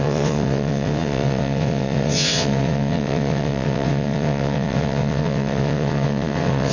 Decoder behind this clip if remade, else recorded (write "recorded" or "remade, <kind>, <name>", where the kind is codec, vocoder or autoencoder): remade, vocoder, WaveNeXt